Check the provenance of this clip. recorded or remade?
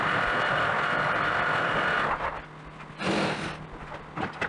recorded